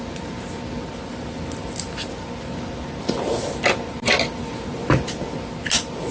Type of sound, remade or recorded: recorded